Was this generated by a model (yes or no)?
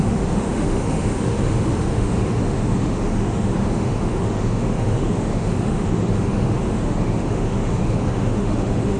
yes